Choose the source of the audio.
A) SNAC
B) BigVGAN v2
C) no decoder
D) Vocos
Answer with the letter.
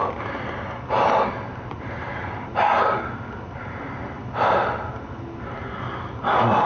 C